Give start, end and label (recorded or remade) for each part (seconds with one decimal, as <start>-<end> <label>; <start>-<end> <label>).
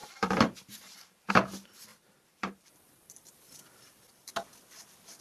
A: 0.0-1.3 remade; 1.3-1.9 recorded; 1.9-3.3 remade; 3.3-5.2 recorded